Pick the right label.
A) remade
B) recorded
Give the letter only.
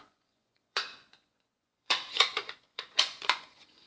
A